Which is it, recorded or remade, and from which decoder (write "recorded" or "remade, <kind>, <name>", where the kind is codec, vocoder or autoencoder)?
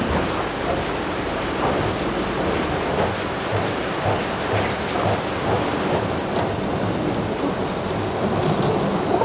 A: recorded